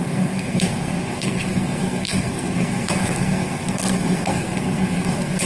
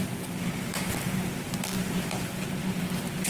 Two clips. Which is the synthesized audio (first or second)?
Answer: first